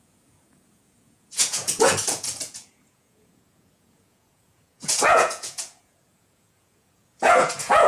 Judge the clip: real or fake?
fake